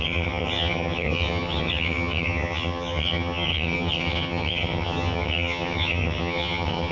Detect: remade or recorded remade